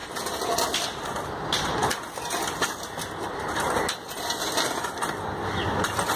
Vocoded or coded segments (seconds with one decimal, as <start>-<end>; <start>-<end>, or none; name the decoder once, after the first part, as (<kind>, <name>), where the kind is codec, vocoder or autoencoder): none